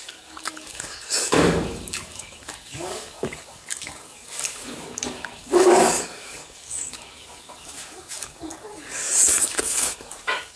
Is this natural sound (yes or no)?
no